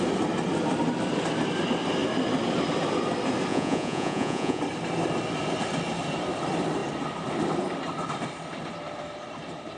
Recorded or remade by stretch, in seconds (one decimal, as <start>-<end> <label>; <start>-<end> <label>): 0.0-3.5 recorded; 3.5-4.6 remade; 4.6-9.8 recorded